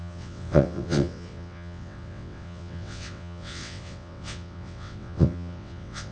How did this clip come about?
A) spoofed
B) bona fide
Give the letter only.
A